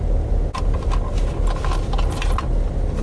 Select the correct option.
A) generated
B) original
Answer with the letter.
B